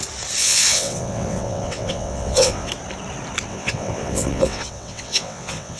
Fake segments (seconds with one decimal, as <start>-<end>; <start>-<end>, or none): 0.4-2.7; 3.5-5.8